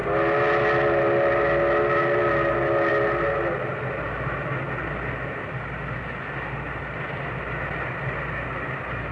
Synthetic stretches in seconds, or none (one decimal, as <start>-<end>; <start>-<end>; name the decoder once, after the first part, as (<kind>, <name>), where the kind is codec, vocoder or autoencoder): none